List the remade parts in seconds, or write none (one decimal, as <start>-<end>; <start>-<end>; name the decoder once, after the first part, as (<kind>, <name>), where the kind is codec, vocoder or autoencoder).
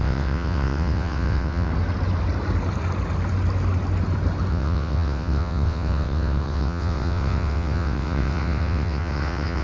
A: 0.0-1.7 (vocoder, WaveNeXt); 4.5-9.6